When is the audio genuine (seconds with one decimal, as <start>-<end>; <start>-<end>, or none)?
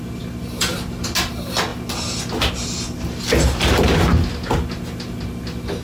0.0-5.8